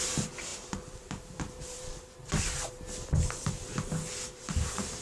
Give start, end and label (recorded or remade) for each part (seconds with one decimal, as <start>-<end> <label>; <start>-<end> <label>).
0.0-5.0 remade